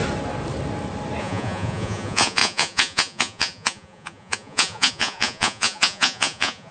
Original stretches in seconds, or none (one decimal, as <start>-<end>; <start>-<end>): 0.0-1.2